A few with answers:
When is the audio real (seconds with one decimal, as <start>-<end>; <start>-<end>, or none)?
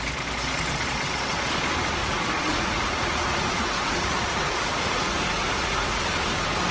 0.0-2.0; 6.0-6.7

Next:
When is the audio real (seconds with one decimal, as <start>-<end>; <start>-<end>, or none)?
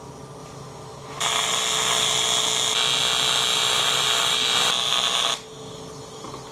0.0-3.5; 4.7-6.5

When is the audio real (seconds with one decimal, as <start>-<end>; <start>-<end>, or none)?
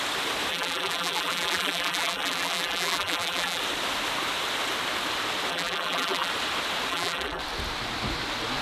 0.0-0.5; 3.6-5.5; 6.3-6.9; 7.4-8.6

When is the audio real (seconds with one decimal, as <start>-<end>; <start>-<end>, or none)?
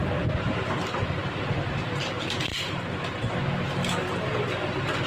0.7-1.2; 1.9-2.5; 3.3-5.1